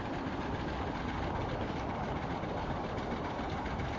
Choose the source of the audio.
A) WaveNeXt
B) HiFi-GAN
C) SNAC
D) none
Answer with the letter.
D